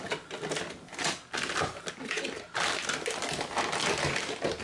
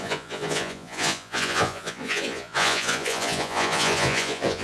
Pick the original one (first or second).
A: first